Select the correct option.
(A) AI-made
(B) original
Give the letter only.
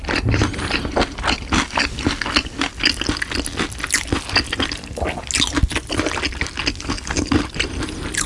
B